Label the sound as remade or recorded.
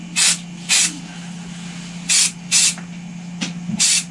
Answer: recorded